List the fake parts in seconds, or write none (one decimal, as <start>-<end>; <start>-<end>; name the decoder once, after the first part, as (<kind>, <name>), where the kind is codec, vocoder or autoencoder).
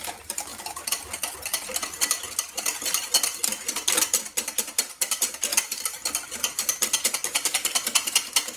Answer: 0.0-0.5 (vocoder, BigVGAN v2); 4.6-5.5; 6.6-8.6